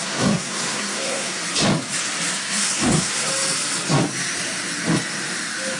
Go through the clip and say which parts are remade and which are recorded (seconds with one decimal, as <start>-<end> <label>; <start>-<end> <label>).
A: 0.0-1.4 remade; 1.4-2.3 recorded; 2.3-3.3 remade; 3.3-5.8 recorded